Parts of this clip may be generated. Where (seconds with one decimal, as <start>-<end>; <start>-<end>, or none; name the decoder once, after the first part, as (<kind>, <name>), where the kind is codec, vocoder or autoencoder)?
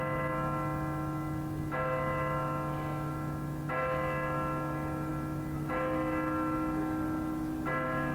none